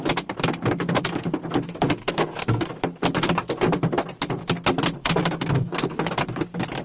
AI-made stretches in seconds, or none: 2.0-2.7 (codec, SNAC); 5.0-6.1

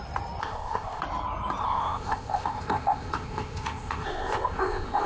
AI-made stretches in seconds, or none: 0.4-1.0 (codec, ZipCodec); 1.6-5.1